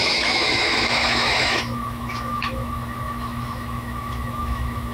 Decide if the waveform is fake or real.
fake